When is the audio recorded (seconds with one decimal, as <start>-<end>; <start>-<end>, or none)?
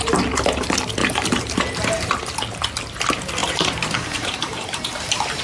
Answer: 0.0-1.0; 2.1-3.4